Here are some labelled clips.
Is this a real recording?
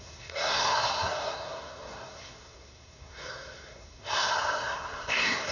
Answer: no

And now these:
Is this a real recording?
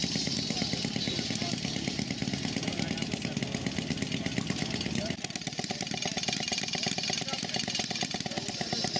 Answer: yes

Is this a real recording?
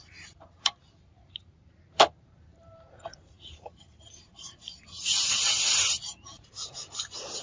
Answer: no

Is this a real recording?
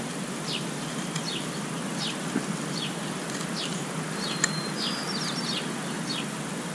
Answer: yes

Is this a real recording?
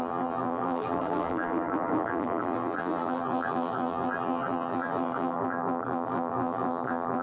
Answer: no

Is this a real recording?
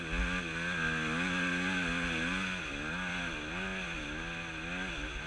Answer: yes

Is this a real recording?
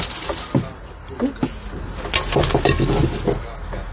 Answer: yes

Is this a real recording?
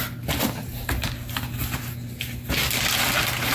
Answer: yes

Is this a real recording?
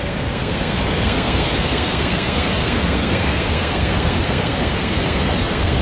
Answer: no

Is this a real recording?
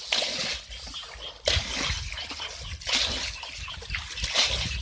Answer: yes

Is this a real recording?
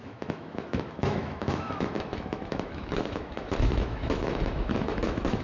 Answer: no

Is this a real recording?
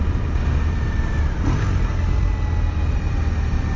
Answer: yes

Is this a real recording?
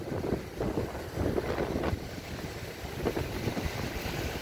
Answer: yes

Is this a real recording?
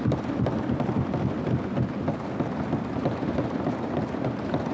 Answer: yes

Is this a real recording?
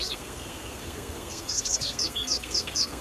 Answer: no